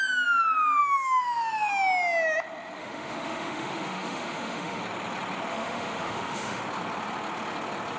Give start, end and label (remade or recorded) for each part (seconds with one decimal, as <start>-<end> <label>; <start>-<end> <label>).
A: 0.0-0.8 recorded; 0.8-1.7 remade; 1.7-2.8 recorded; 2.8-4.8 remade; 4.8-5.5 recorded; 5.5-6.6 remade; 6.6-8.0 recorded